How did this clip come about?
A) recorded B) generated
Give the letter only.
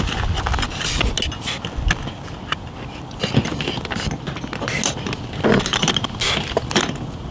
A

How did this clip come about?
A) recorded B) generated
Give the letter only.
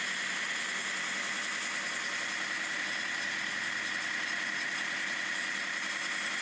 A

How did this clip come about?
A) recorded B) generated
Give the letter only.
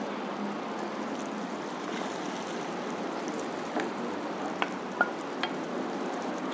A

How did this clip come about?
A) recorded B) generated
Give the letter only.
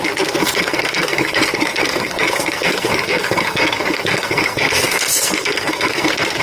B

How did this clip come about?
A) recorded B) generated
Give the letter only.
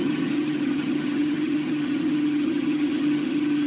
B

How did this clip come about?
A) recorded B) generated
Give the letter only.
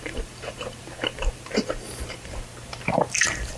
B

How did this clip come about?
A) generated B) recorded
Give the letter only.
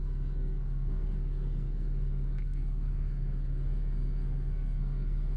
A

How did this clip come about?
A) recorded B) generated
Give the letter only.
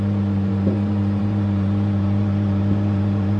B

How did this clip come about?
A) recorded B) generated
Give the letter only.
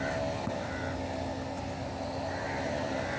A